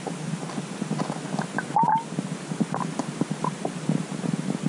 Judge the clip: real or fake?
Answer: real